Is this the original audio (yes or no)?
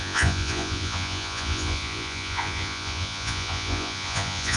no